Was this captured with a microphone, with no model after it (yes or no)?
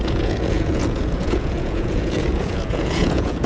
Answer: no